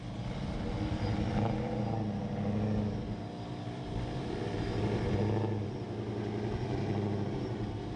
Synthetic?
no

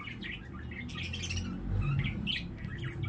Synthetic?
no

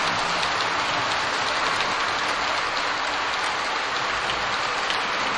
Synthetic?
no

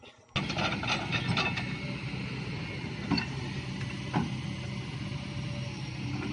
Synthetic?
no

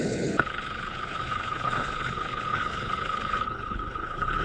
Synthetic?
yes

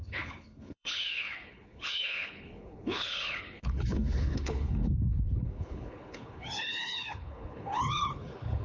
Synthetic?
yes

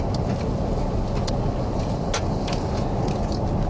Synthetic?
no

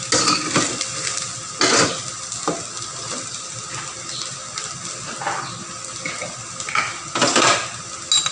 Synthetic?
no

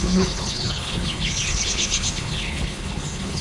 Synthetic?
yes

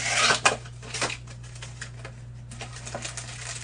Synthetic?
no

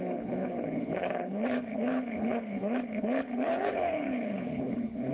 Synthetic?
yes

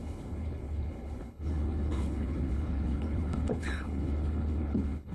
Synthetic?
yes